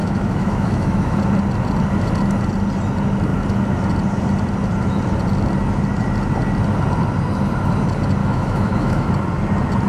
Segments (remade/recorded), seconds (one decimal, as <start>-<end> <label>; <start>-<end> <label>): 0.0-1.2 remade; 1.2-8.2 recorded; 8.2-9.1 remade; 9.1-9.9 recorded